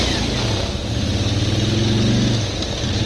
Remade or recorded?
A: recorded